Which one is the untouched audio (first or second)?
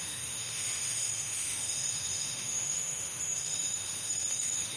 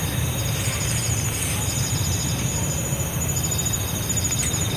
second